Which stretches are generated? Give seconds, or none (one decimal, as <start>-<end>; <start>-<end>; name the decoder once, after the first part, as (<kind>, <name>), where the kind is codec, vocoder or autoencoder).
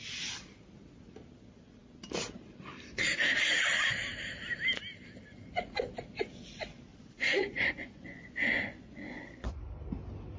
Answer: 5.3-5.9 (vocoder, Vocos); 6.9-9.6